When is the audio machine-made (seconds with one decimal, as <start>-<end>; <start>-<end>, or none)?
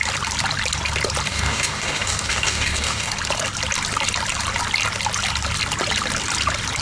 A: 1.3-3.1